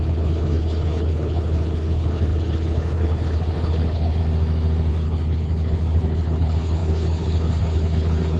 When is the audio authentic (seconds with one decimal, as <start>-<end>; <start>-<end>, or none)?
4.2-4.9